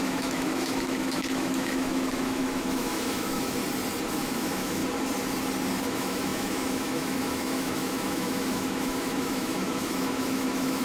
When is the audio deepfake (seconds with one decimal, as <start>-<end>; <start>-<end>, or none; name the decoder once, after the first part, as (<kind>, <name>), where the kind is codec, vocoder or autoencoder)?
0.0-3.6 (autoencoder, DAC-VAE); 4.1-4.8; 5.8-10.8